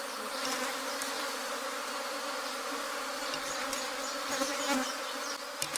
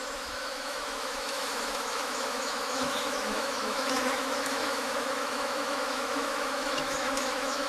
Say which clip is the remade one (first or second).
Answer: second